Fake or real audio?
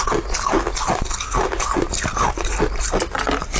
real